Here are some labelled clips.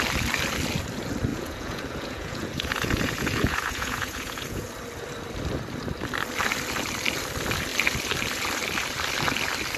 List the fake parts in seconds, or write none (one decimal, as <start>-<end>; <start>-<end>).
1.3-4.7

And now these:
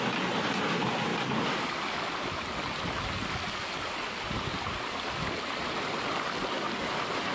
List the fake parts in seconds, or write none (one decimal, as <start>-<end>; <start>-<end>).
none

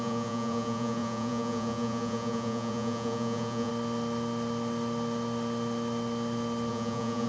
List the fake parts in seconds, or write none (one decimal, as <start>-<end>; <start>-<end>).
0.0-3.7; 6.7-7.3

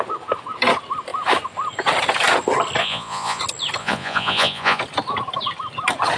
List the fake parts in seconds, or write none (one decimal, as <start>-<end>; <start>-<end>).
2.8-3.4; 3.8-4.8